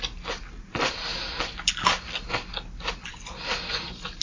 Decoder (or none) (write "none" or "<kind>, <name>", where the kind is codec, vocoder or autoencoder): none